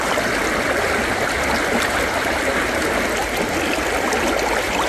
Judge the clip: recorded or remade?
recorded